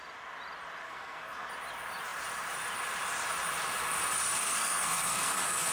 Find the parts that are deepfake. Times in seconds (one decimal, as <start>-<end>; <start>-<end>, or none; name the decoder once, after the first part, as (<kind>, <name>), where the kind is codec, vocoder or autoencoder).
0.8-1.5 (codec, SNAC); 4.4-5.7